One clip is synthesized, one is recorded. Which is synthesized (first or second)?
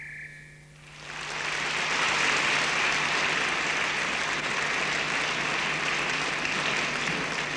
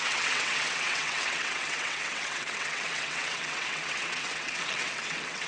second